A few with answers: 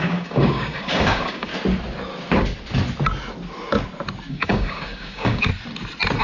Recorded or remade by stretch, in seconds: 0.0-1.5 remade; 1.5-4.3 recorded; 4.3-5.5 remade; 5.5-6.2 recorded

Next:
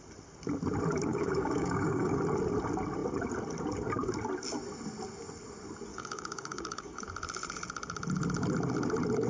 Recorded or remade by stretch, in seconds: 0.0-1.1 recorded; 1.1-2.2 remade; 2.2-5.9 recorded; 5.9-7.0 remade; 7.0-9.3 recorded